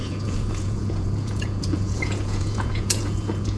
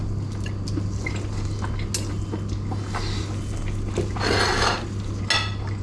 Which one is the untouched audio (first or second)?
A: second